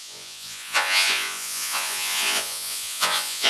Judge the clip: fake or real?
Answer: fake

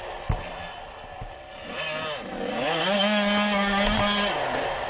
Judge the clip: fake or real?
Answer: real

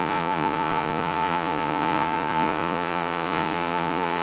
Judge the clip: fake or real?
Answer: fake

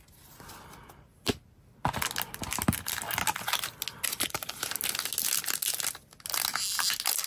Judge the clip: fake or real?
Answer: real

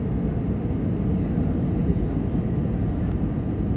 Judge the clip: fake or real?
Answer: real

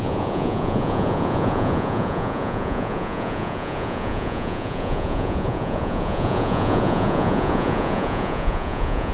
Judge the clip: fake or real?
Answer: fake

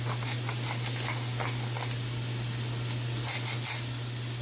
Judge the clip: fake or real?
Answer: real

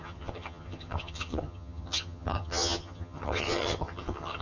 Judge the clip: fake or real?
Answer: fake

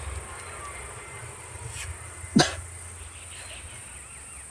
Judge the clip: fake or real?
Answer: real